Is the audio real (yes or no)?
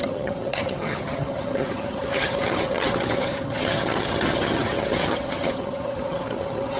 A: no